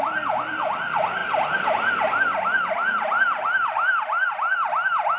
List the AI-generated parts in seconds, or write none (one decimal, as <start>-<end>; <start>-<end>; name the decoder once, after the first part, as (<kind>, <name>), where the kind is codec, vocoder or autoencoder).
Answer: none